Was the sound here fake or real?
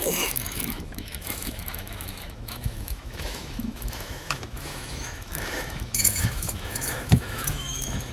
fake